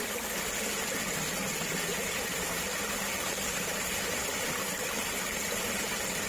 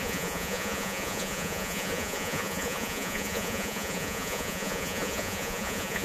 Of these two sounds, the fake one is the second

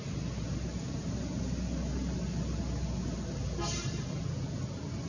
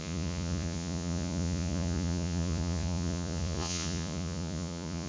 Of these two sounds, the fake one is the second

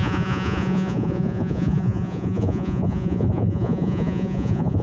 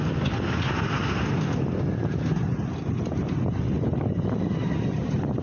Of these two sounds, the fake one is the first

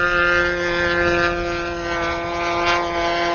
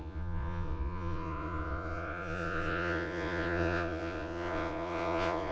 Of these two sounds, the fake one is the second